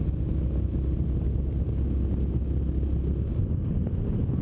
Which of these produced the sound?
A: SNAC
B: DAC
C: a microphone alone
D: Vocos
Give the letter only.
C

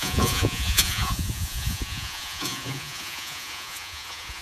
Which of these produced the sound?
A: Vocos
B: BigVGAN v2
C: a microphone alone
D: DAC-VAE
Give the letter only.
A